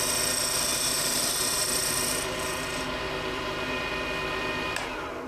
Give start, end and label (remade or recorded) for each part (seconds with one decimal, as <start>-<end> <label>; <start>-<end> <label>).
0.0-0.7 recorded; 0.7-3.9 remade; 3.9-5.3 recorded